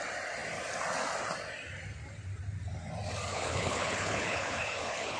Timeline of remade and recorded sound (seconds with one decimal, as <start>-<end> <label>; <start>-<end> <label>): 0.0-3.3 recorded; 3.3-5.2 remade